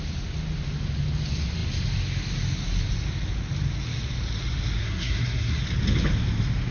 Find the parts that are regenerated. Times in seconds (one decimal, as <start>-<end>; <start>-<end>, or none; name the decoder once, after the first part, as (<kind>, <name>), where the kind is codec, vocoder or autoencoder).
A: 4.8-5.6 (codec, SNAC)